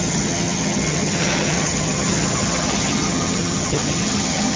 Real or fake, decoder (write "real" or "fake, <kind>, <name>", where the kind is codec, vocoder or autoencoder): fake, vocoder, HiFi-GAN